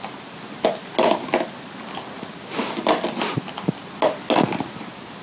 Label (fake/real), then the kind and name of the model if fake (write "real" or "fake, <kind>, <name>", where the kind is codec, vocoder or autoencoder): real